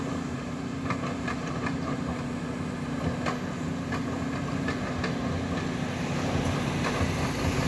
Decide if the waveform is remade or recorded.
recorded